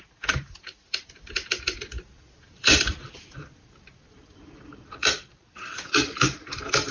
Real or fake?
fake